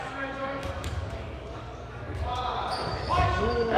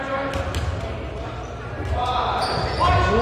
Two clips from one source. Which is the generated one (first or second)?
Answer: first